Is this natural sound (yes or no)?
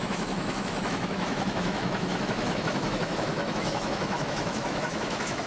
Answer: no